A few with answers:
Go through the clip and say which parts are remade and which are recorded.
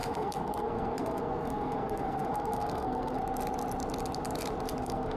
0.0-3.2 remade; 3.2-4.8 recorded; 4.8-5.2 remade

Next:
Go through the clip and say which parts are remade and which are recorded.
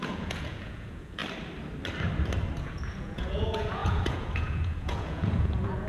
0.0-1.2 remade; 1.2-2.6 recorded; 2.6-5.9 remade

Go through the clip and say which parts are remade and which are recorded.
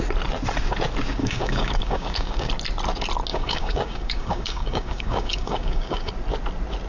0.0-1.2 recorded; 1.2-2.5 remade; 2.5-3.3 recorded; 3.3-6.1 remade; 6.1-6.9 recorded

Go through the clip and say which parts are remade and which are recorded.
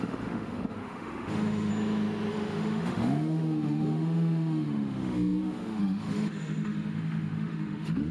0.0-1.7 remade; 1.7-2.3 recorded; 2.3-8.1 remade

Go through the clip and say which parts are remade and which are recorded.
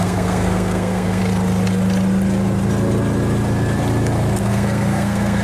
0.0-1.2 remade; 1.2-4.4 recorded; 4.4-5.4 remade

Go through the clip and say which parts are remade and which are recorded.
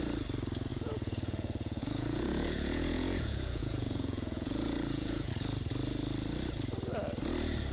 0.0-0.7 recorded; 0.7-5.3 remade; 5.3-7.7 recorded